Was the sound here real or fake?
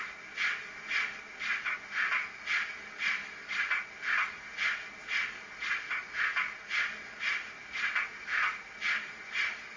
real